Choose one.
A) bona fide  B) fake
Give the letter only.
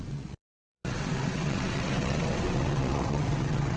B